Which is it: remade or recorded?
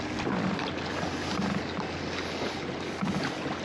recorded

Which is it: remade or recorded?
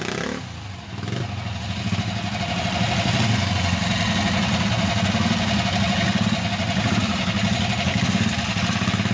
recorded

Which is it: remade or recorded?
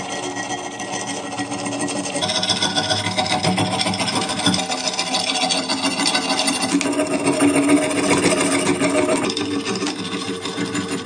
recorded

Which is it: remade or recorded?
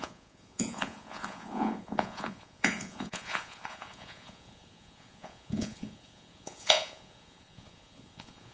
remade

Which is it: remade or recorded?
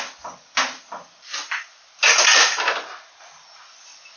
recorded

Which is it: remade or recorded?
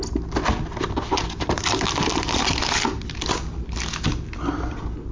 recorded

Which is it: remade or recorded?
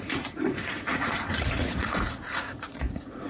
remade